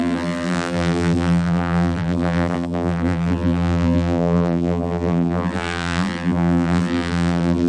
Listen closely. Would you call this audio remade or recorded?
remade